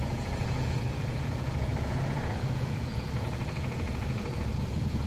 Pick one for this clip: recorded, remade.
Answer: remade